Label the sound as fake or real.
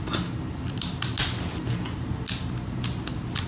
real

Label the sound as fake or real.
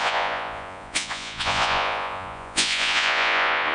fake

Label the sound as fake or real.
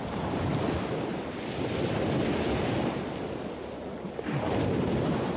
real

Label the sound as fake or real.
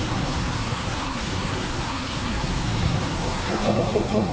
fake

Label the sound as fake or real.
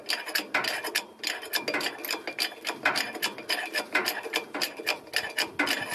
real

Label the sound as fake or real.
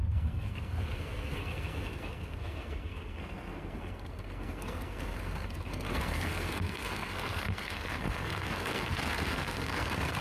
fake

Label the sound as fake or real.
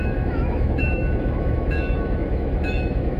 fake